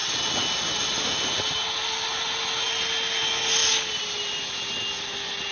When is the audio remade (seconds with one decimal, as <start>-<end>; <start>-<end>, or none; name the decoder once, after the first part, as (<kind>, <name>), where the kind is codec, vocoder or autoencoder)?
none